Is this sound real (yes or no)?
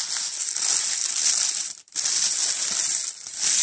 yes